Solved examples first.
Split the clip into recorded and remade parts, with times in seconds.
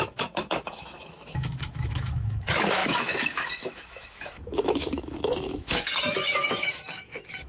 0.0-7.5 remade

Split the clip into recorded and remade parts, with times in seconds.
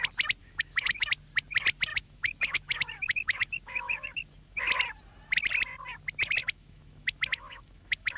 0.0-0.4 recorded; 0.4-1.1 remade; 1.1-1.9 recorded; 1.9-4.6 remade; 4.6-6.4 recorded; 6.4-8.2 remade